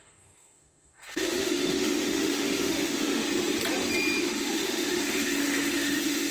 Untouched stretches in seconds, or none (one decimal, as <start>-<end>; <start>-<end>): 3.2-4.2